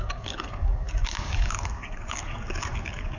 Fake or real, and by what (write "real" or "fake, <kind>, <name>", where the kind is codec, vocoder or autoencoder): fake, codec, DAC